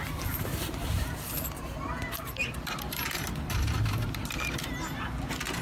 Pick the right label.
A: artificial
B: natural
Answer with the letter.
A